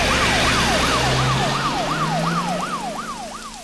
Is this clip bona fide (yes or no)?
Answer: yes